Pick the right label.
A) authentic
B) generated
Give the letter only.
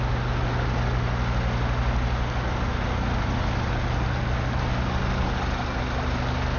A